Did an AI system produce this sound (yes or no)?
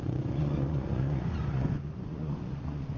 yes